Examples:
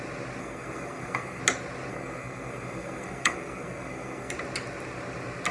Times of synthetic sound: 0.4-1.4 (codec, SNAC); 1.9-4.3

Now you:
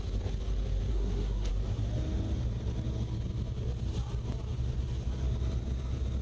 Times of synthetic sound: 0.9-1.5 (codec, SNAC)

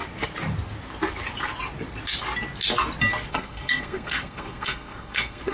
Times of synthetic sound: 3.3-5.5 (codec, SNAC)

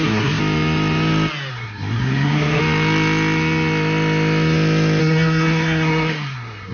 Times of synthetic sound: 0.0-0.4 (codec, SNAC); 1.5-2.6; 5.0-6.7